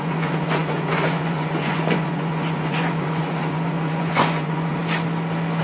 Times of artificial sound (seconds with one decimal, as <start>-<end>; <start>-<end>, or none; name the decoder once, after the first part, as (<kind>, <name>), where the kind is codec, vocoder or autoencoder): 0.0-4.8 (vocoder, Vocos)